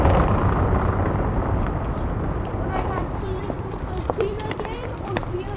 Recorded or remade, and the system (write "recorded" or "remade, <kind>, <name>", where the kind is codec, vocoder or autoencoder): remade, vocoder, BigVGAN v2